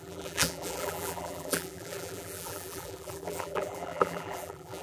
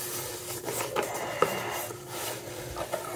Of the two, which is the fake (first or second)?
first